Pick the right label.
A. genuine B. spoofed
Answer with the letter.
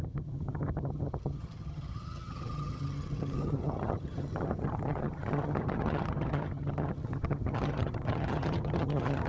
B